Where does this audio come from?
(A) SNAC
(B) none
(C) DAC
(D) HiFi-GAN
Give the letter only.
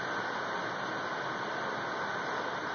B